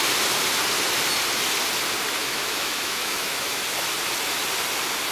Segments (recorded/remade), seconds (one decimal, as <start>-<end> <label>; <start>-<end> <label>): 0.0-2.2 recorded; 2.2-3.6 remade; 3.6-5.1 recorded